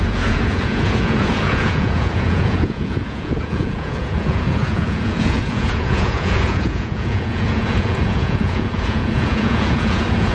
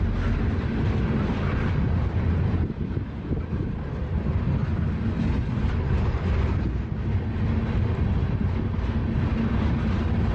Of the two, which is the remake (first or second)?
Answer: first